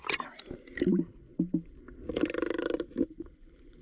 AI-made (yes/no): no